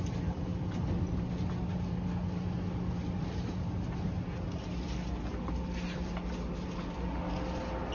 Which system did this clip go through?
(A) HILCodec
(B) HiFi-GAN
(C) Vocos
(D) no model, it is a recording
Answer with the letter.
D